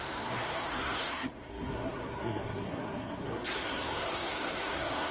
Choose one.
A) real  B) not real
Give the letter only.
B